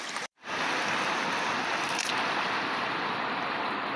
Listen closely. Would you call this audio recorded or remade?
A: remade